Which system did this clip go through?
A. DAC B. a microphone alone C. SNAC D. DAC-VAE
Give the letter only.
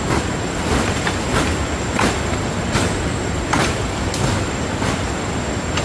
B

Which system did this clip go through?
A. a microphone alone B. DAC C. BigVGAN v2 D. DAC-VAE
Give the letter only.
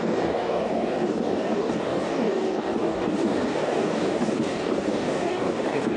B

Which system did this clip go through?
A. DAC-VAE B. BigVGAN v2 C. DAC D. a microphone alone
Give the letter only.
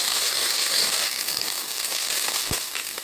C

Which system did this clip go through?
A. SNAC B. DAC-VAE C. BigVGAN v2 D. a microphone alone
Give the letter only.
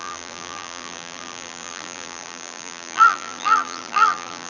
C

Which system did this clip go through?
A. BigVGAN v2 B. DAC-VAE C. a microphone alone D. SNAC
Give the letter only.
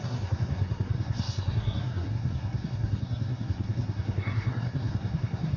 D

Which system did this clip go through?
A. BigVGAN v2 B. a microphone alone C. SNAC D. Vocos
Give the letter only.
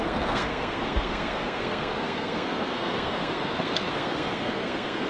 C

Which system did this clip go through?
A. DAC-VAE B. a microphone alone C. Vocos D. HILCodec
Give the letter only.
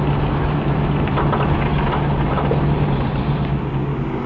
B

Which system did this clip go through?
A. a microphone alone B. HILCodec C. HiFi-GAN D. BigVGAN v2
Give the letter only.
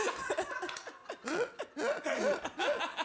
A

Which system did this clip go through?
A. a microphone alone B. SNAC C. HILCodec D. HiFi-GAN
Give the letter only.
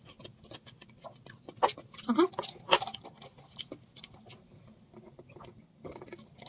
A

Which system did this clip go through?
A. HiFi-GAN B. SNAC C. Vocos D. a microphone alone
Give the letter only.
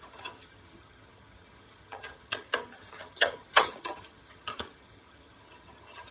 A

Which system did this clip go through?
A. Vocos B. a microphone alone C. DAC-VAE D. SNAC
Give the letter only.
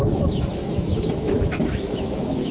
C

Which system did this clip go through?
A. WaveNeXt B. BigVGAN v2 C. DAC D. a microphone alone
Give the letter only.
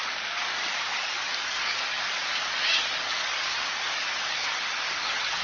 C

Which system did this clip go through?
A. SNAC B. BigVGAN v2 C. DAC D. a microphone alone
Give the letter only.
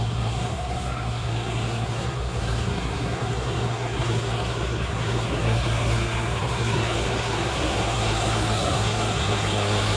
A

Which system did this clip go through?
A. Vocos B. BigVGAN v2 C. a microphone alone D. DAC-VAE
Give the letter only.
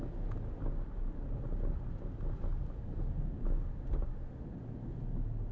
C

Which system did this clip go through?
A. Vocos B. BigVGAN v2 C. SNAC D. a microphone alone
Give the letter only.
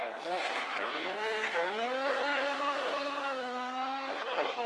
C